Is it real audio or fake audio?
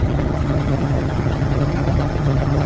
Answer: fake